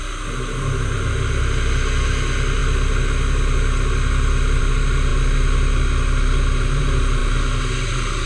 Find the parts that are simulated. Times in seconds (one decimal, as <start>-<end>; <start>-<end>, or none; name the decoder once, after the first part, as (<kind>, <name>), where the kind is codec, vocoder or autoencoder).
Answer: none